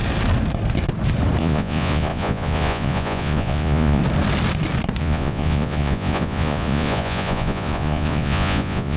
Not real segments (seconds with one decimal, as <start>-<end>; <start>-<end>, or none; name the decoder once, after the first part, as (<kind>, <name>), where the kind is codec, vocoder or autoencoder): 1.4-4.0 (vocoder, Vocos); 5.0-9.0